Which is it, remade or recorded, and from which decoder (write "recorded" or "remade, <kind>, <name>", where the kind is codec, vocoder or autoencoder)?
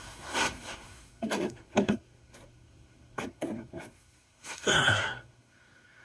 remade, codec, SNAC